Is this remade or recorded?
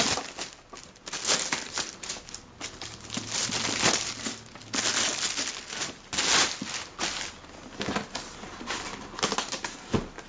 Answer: recorded